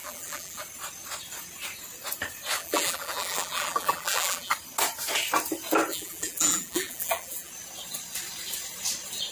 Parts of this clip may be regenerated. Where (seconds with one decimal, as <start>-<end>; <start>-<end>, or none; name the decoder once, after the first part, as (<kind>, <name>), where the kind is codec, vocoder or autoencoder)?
0.0-0.6 (vocoder, BigVGAN v2); 2.6-4.5; 5.9-7.5